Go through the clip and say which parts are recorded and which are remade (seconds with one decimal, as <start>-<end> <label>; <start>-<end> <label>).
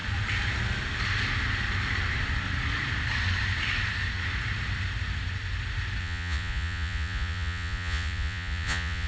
0.0-6.0 recorded; 6.0-9.1 remade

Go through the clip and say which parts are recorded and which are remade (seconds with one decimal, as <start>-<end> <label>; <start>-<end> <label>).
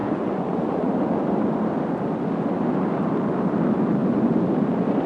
0.0-0.9 remade; 0.9-5.1 recorded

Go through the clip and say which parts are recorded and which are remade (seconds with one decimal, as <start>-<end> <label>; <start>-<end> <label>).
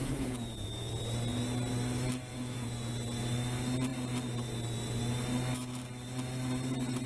0.0-1.0 remade; 1.0-2.3 recorded; 2.3-2.9 remade; 2.9-7.1 recorded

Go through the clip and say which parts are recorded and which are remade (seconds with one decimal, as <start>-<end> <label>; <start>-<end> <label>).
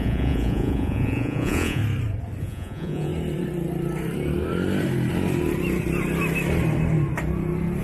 0.0-1.8 remade; 1.8-2.4 recorded; 2.4-3.1 remade; 3.1-7.8 recorded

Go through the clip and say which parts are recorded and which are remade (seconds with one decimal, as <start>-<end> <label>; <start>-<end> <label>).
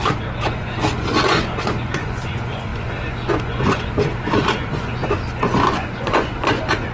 0.0-6.9 remade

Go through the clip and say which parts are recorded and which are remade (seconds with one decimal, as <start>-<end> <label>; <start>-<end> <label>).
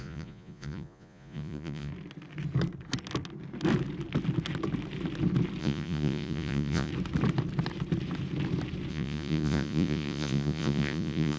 0.0-1.9 remade; 1.9-5.6 recorded; 5.6-6.9 remade; 6.9-8.9 recorded; 8.9-11.4 remade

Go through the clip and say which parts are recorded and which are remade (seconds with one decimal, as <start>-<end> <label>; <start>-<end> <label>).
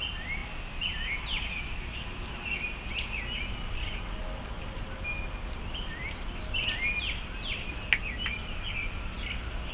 0.0-9.7 recorded